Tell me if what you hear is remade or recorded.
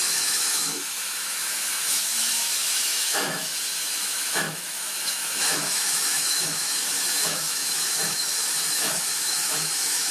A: remade